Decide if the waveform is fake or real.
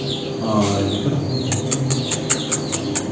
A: real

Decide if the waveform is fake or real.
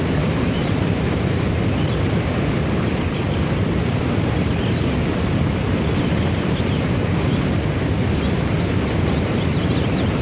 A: real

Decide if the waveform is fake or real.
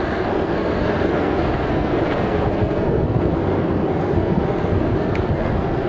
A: fake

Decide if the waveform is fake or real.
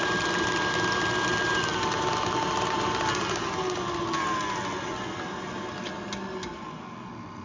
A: real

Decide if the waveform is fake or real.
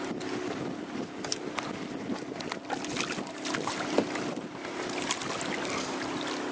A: real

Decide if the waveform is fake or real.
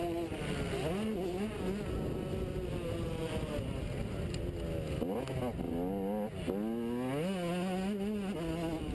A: real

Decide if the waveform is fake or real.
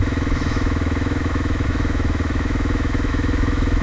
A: fake